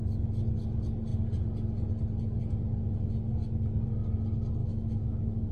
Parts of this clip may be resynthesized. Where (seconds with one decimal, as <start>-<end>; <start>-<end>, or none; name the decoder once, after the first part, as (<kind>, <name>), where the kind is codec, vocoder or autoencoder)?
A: 4.6-5.5 (autoencoder, DAC-VAE)